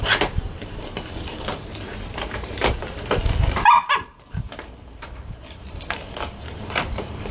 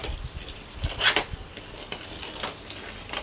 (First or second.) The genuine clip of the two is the second